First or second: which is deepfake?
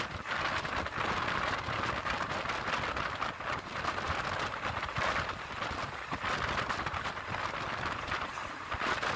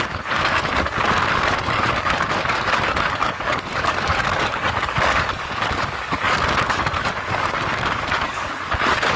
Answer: second